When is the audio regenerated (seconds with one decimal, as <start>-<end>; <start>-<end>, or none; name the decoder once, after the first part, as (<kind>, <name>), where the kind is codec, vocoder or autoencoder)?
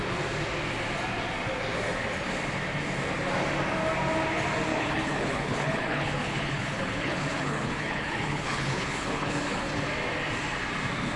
4.7-9.7 (codec, HILCodec)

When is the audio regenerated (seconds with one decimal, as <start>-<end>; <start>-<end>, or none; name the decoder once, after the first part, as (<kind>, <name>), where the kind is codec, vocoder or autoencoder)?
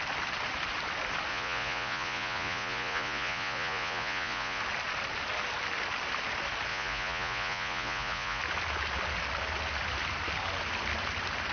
1.3-4.6 (vocoder, Vocos); 6.7-8.4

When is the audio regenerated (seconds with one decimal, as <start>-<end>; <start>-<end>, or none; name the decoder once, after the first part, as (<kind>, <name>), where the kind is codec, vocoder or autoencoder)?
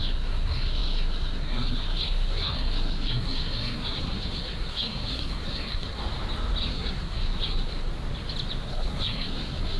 0.0-6.0 (codec, SNAC); 6.7-7.9; 8.7-9.8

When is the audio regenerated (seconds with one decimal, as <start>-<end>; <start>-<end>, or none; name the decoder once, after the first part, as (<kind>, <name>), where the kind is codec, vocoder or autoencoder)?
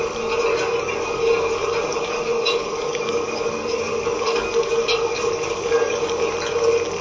0.5-1.2 (codec, DAC); 1.9-6.1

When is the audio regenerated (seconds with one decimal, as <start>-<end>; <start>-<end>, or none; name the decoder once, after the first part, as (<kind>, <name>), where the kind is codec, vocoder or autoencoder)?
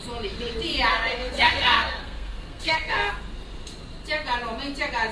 0.9-3.1 (codec, SNAC)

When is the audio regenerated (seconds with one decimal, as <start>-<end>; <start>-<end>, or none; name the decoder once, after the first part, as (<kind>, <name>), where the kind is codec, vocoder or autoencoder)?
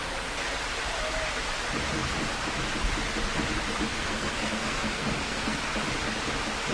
3.9-5.6 (codec, SNAC)